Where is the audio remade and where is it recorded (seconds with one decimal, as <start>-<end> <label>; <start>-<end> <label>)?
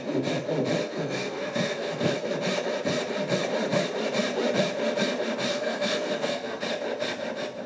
0.0-0.8 recorded; 0.8-2.3 remade; 2.3-5.5 recorded; 5.5-6.6 remade; 6.6-7.7 recorded